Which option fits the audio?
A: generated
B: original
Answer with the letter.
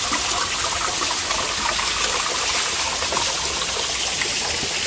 B